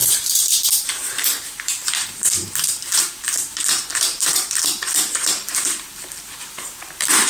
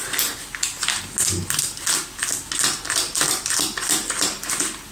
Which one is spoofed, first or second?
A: first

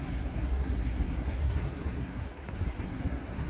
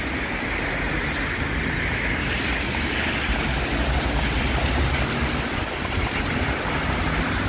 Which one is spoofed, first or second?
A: first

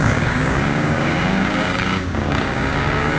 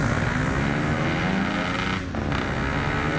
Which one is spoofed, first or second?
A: first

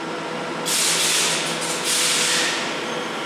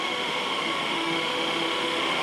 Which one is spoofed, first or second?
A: second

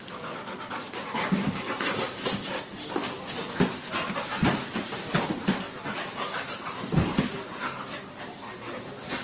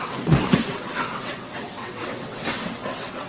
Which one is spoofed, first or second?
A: second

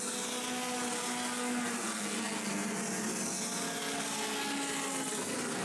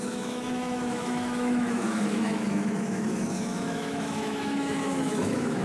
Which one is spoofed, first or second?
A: second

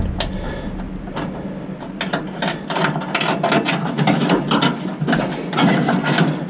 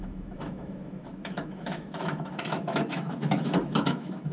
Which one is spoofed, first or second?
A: second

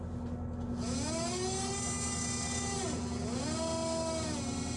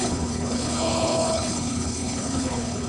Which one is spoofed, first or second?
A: second